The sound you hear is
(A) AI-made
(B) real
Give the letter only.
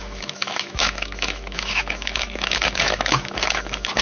A